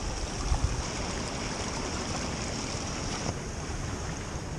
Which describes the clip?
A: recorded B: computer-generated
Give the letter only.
A